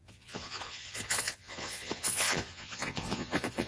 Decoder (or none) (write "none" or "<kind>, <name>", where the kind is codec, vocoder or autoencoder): vocoder, Vocos